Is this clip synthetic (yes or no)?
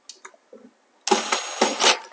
no